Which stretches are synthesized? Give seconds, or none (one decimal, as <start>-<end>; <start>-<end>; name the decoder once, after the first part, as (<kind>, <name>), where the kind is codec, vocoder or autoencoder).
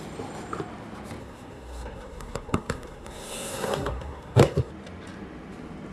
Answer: 1.2-4.7 (codec, SNAC)